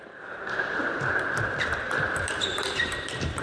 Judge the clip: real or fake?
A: fake